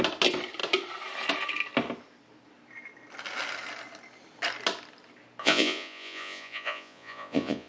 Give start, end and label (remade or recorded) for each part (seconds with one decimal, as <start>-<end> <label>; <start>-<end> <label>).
0.0-5.4 recorded; 5.4-7.7 remade